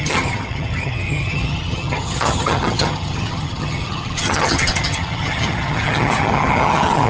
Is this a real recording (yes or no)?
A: no